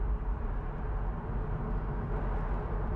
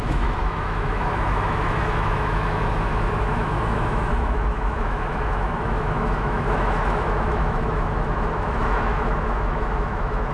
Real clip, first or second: first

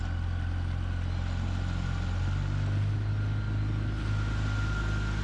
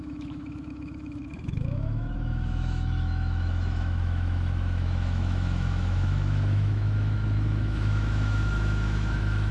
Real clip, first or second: first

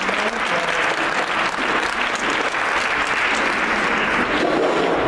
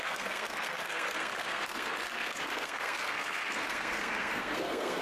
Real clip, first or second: first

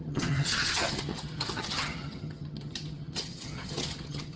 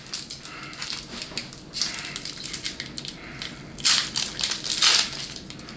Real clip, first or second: second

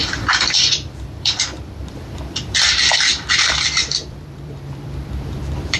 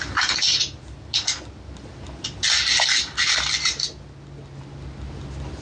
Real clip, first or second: second